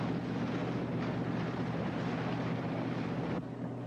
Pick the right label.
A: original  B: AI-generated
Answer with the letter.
A